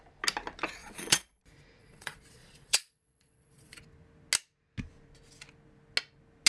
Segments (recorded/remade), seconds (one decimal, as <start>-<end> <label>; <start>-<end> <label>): 0.0-0.8 recorded; 0.8-1.4 remade; 1.4-1.8 recorded; 1.8-3.8 remade; 3.8-6.5 recorded